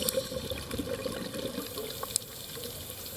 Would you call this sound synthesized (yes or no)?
no